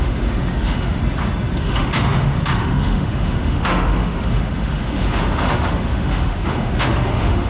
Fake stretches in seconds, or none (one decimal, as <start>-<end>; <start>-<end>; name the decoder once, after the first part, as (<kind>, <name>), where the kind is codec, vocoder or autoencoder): 0.0-1.0 (autoencoder, DAC-VAE); 1.6-7.5